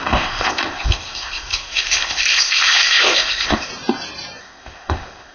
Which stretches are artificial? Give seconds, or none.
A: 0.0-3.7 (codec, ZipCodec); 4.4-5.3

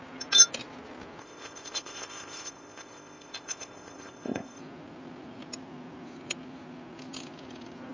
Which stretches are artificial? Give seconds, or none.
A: 1.2-4.6 (codec, ZipCodec)